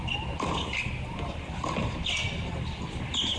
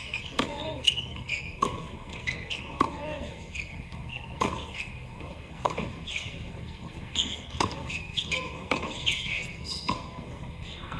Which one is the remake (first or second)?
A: second